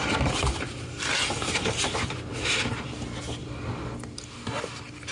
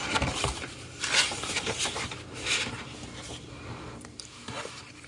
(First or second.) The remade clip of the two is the second